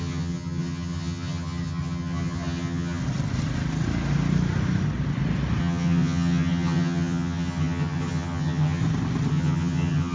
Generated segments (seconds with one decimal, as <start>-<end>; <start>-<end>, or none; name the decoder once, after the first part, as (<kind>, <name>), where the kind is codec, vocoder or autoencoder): 0.0-3.0 (vocoder, HiFi-GAN); 5.6-8.8; 9.3-10.1

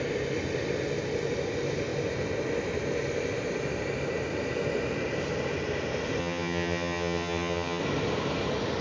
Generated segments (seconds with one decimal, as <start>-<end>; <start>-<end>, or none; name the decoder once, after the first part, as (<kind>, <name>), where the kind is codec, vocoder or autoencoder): 6.2-7.8 (vocoder, HiFi-GAN)

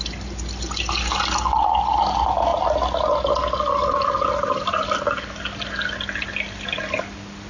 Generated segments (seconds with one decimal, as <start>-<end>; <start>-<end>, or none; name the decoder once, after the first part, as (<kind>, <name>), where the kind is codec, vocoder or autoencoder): none